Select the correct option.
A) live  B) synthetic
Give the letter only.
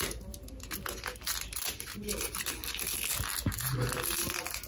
A